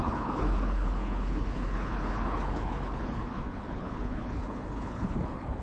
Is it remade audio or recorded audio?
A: remade